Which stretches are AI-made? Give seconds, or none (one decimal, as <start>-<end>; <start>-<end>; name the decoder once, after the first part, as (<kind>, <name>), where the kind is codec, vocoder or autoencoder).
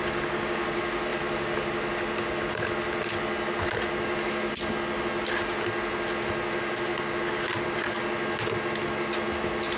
none